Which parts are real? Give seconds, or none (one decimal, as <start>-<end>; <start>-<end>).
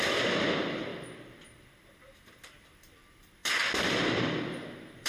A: none